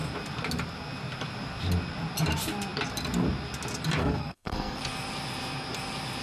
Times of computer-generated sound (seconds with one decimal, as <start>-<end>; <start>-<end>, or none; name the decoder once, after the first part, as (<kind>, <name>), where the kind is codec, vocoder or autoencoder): 4.0-4.8 (codec, SNAC)